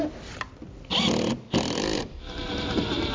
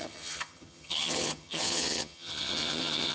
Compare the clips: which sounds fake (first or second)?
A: second